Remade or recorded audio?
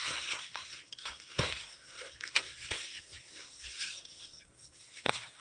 remade